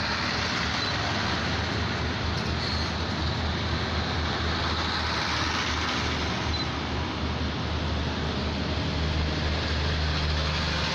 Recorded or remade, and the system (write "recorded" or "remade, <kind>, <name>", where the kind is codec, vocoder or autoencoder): recorded